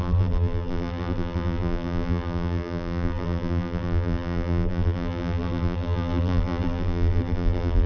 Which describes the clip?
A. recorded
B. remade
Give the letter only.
B